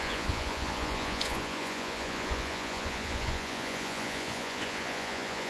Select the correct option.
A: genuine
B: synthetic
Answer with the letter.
B